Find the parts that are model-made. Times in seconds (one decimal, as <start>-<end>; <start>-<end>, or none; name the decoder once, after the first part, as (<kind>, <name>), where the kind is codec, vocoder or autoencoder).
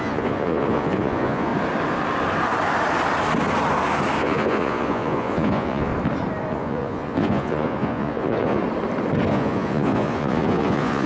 0.0-1.5 (vocoder, Vocos); 4.2-5.9; 6.5-8.6; 9.3-11.1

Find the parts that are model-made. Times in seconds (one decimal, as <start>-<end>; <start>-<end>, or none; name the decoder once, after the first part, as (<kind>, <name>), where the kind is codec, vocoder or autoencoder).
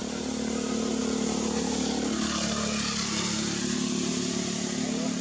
none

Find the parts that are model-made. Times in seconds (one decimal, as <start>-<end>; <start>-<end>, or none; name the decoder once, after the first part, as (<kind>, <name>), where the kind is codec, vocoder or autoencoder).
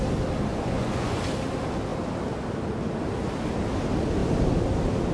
0.5-1.2 (vocoder, Vocos)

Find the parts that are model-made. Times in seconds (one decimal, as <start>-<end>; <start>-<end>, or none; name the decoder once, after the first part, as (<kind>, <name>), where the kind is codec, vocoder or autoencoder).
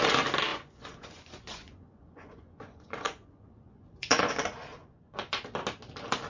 0.5-4.3 (vocoder, Vocos); 4.8-5.4